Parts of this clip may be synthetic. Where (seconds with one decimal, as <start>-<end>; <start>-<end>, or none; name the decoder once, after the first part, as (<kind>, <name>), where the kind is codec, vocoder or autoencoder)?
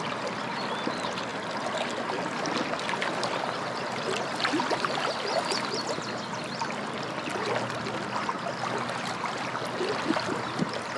none